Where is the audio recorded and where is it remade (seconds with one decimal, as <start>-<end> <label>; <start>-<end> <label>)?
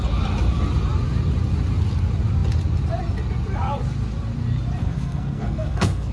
0.0-4.8 recorded; 4.8-6.1 remade